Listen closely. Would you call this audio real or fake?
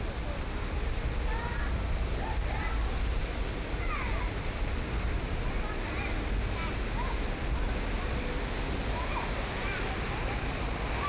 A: real